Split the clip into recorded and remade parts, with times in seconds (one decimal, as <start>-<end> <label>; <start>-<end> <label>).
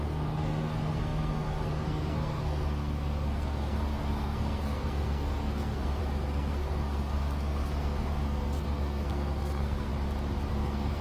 0.0-9.9 remade; 9.9-10.5 recorded; 10.5-11.0 remade